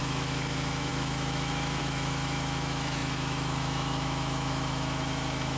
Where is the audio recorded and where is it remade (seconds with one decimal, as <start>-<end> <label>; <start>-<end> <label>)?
0.0-5.6 remade